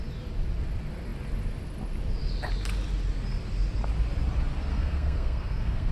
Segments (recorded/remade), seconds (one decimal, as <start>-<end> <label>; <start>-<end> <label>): 0.0-4.7 recorded; 4.7-5.9 remade